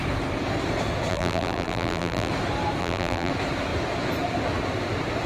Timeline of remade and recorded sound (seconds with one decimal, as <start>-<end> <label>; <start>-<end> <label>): 0.0-1.1 recorded; 1.1-2.3 remade; 2.3-2.8 recorded; 2.8-3.3 remade; 3.3-5.3 recorded